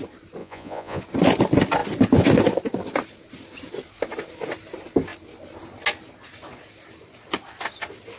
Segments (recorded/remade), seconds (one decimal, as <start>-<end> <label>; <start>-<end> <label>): 0.0-0.4 recorded; 0.4-1.0 remade; 1.0-8.2 recorded